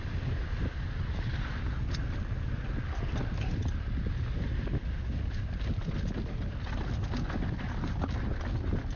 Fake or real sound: real